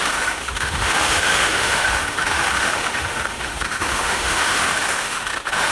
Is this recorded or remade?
remade